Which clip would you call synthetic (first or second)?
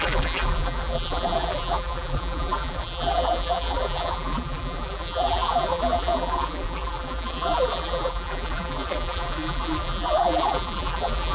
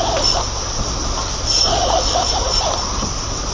first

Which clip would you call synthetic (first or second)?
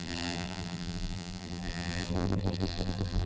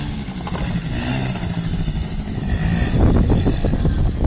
first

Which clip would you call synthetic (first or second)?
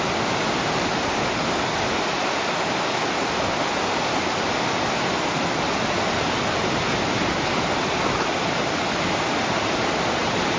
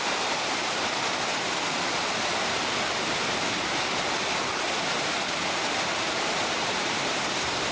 second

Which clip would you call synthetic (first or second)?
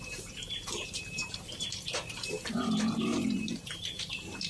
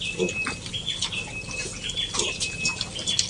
first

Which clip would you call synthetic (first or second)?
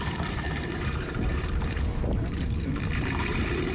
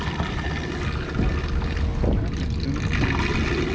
first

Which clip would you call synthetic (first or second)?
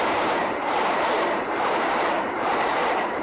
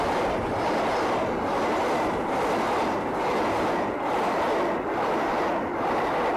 first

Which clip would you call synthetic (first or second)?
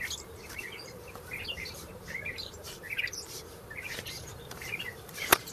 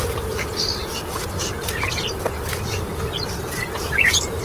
first